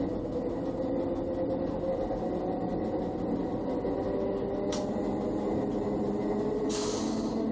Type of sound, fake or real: real